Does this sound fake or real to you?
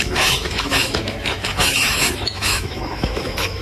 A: fake